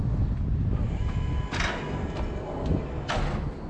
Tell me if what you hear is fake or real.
real